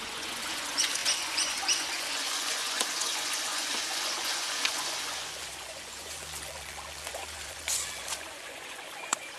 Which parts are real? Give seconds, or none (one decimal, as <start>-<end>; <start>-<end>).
none